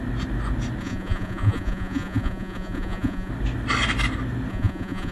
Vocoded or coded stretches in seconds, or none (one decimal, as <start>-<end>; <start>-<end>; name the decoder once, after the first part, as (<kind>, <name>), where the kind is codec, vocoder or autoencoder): 0.8-3.3 (vocoder, Vocos); 4.5-5.1